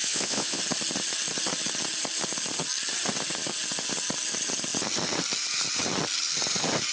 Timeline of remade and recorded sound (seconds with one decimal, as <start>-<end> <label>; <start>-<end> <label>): 0.0-0.6 remade; 0.6-6.9 recorded